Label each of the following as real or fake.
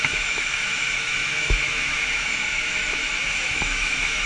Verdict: fake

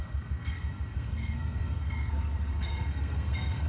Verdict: fake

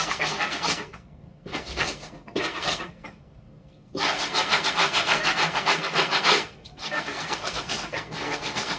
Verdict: fake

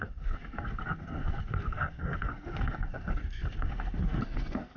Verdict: fake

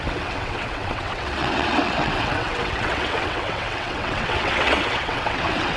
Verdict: fake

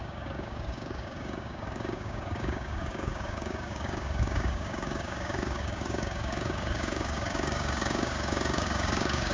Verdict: fake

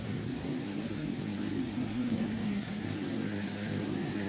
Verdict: fake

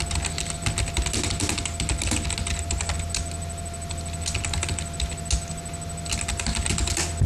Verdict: real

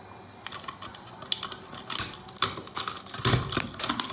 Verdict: real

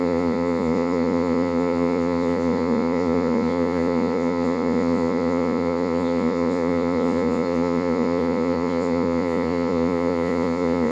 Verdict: fake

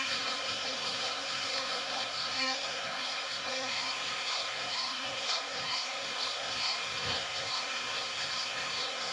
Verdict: fake